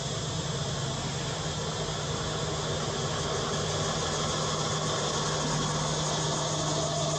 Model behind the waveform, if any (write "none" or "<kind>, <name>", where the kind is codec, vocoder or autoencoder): none